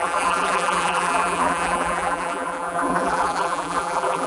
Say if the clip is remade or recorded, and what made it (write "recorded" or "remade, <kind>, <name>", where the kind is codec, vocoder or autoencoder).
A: remade, vocoder, BigVGAN v2